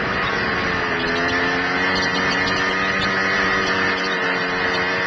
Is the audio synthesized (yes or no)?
no